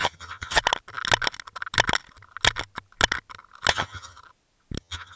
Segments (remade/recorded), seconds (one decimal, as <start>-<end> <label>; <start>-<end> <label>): 0.0-0.6 remade; 0.6-3.7 recorded; 3.7-4.2 remade; 4.2-4.8 recorded; 4.8-5.2 remade